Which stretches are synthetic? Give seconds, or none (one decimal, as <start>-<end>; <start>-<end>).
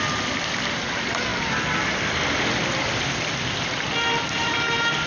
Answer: none